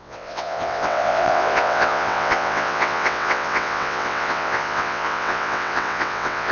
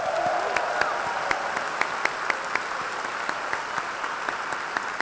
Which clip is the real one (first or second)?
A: second